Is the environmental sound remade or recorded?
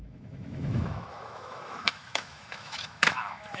remade